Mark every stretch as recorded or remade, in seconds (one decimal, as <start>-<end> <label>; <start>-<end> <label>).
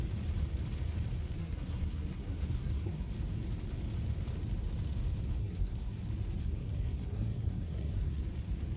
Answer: 0.0-1.4 recorded; 1.4-3.1 remade; 3.1-5.4 recorded; 5.4-6.0 remade; 6.0-6.4 recorded; 6.4-8.2 remade; 8.2-8.8 recorded